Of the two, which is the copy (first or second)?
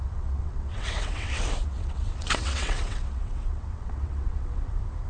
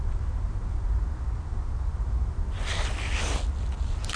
first